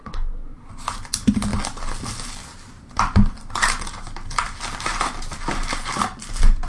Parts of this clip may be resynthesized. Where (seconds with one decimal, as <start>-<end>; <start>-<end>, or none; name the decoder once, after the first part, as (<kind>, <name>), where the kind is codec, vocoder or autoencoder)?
0.0-0.7 (codec, SNAC)